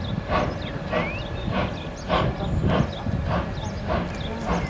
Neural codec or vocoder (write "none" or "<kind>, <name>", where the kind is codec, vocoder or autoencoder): none